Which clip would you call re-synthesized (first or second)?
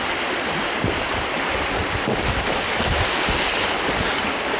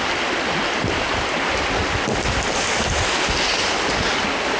first